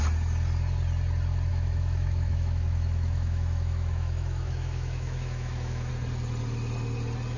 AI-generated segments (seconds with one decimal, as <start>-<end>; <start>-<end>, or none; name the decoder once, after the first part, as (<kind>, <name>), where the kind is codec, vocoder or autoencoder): 1.5-5.9 (autoencoder, DAC-VAE)